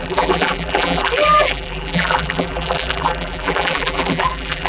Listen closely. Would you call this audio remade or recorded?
remade